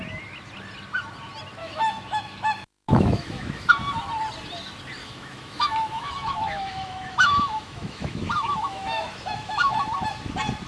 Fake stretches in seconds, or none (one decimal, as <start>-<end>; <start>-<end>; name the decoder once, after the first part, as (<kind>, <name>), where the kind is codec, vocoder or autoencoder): 1.6-3.7 (autoencoder, DAC-VAE); 5.0-9.7